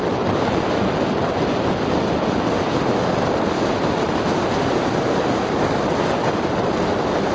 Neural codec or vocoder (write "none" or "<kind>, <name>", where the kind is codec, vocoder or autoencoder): none